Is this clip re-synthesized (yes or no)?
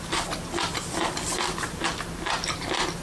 no